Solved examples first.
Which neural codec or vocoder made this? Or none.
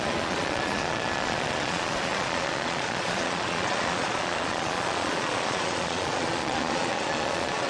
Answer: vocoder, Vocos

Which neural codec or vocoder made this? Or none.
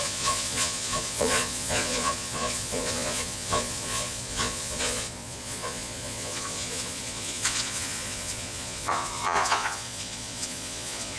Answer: vocoder, Vocos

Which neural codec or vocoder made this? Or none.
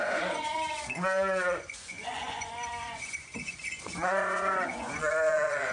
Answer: vocoder, Vocos